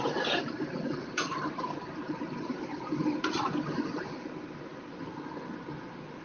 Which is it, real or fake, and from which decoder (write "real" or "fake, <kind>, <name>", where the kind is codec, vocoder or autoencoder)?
real